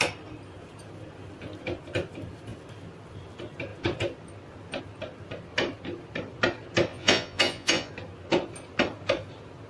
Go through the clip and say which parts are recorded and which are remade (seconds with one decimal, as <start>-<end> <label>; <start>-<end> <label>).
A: 0.0-6.9 recorded; 6.9-7.9 remade; 7.9-9.7 recorded

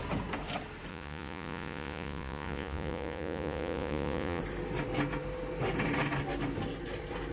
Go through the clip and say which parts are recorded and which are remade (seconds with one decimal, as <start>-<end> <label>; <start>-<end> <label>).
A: 0.0-0.9 recorded; 0.9-4.4 remade; 4.4-7.3 recorded

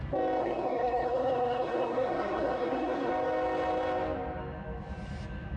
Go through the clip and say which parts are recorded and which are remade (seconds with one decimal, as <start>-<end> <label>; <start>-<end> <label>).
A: 0.0-0.4 recorded; 0.4-3.1 remade; 3.1-5.6 recorded

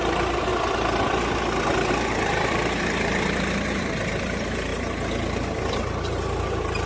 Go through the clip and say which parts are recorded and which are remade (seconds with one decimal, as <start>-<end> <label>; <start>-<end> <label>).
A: 0.0-0.5 remade; 0.5-1.9 recorded; 1.9-4.7 remade; 4.7-6.0 recorded; 6.0-6.9 remade

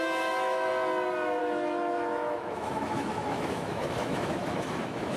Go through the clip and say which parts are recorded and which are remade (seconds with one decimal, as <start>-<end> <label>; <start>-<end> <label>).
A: 0.0-0.7 remade; 0.7-1.4 recorded; 1.4-5.2 remade